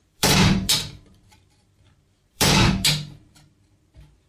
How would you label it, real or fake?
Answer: fake